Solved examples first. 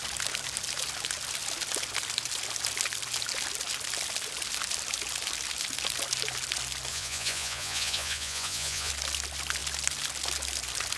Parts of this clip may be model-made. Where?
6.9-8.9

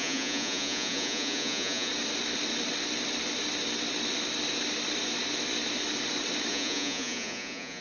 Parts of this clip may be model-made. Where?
0.0-1.9; 6.5-7.8